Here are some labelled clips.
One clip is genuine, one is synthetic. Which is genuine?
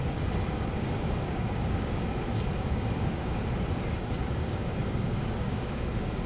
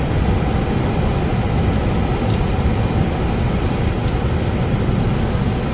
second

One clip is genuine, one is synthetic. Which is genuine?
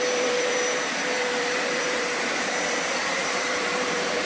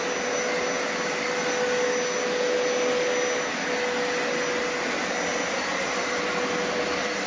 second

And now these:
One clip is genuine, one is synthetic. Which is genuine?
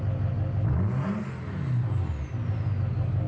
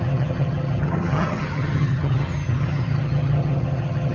first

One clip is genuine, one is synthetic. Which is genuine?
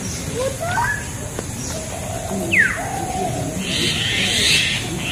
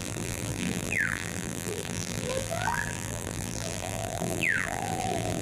first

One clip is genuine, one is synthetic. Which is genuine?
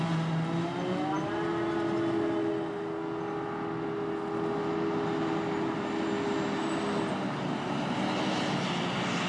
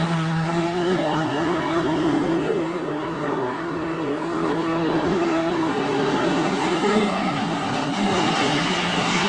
first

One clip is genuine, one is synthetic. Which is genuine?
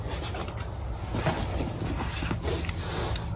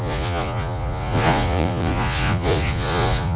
first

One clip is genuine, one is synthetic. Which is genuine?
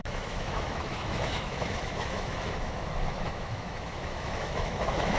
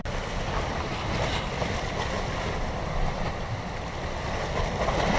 second